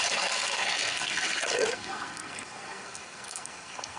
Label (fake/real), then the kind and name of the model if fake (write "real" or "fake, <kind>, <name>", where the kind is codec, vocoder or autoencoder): fake, codec, SNAC